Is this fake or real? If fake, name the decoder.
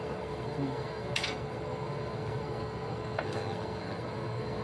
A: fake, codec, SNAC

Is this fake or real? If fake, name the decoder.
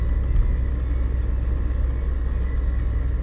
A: real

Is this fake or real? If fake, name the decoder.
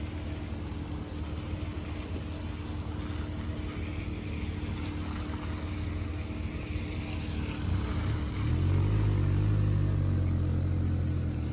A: real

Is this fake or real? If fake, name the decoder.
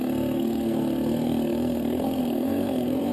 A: fake, codec, SNAC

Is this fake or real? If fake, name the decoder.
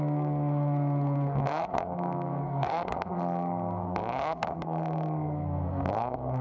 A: fake, codec, SNAC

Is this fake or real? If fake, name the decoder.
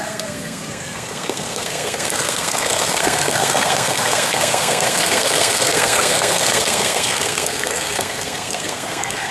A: fake, codec, SNAC